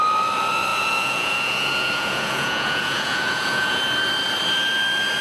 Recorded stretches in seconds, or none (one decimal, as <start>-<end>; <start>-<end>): 0.0-0.7; 3.8-5.2